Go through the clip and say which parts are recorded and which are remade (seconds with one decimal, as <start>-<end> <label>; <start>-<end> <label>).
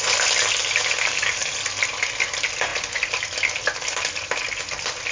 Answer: 0.0-5.1 recorded